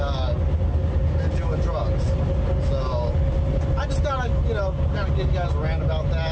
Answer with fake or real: real